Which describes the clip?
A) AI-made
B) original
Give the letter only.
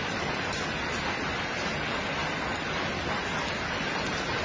B